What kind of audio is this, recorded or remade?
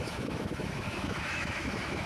remade